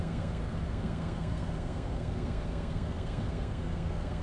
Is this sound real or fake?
fake